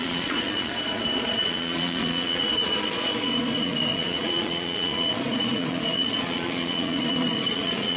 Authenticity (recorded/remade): remade